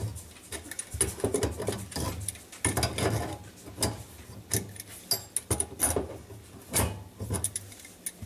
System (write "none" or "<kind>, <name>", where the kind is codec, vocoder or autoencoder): none